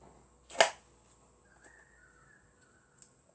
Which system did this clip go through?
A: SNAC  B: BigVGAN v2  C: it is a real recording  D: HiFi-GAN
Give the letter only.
C